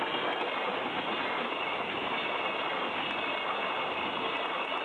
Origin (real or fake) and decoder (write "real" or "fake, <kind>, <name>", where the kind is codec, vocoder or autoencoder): real